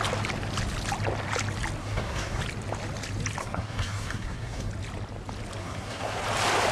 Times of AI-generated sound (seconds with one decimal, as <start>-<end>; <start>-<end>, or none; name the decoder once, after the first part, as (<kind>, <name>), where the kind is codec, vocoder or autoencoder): 1.8-2.4 (codec, SNAC); 3.4-4.7; 5.6-6.2